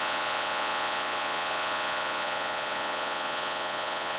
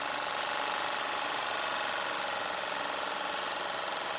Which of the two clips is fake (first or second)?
first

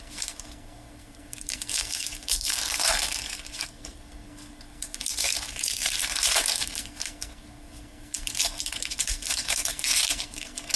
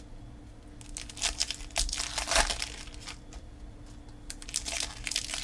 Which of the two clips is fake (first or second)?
first